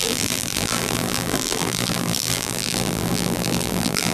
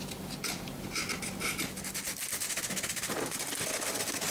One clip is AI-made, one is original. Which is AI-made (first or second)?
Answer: first